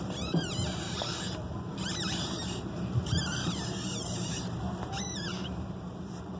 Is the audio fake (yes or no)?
yes